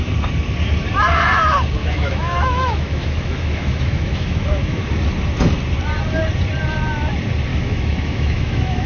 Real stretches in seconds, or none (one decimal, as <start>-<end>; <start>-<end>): 0.0-1.8; 4.9-7.5